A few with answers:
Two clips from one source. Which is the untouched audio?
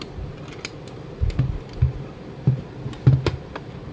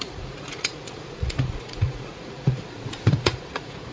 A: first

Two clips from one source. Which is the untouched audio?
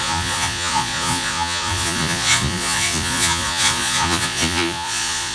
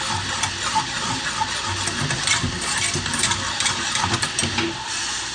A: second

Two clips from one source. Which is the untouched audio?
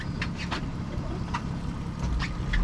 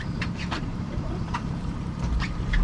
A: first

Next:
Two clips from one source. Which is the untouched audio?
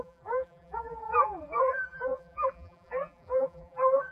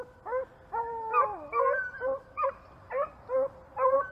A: second